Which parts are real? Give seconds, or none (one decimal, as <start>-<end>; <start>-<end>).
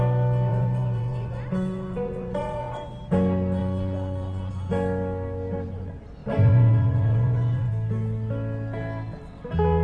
0.0-0.5; 2.8-3.6; 4.5-6.2; 7.7-9.8